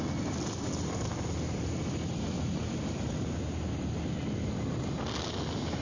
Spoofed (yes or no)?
no